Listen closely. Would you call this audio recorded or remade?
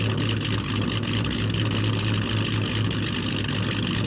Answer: recorded